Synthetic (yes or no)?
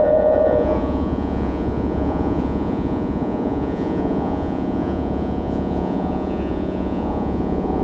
yes